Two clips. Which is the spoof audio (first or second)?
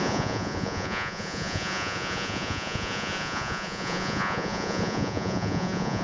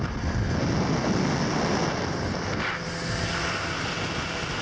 first